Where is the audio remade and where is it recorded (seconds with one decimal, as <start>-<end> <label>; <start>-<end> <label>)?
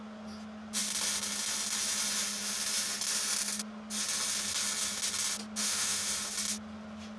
0.0-5.6 recorded; 5.6-6.1 remade; 6.1-7.2 recorded